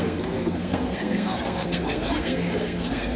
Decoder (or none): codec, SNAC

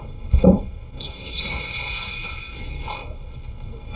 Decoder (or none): codec, SNAC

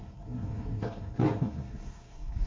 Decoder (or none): codec, SNAC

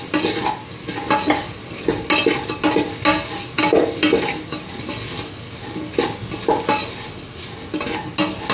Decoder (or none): none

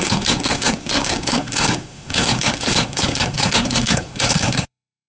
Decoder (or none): codec, SNAC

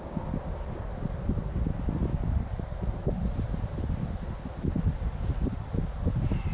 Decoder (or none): none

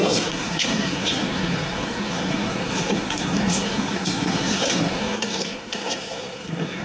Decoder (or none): codec, SNAC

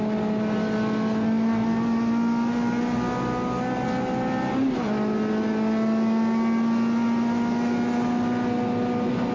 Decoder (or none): none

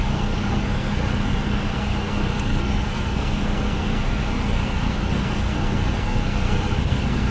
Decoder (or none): codec, SNAC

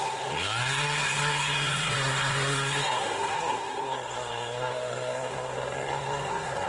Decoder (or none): codec, SNAC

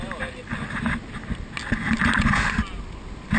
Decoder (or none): none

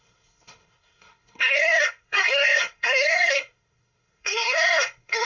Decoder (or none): codec, SNAC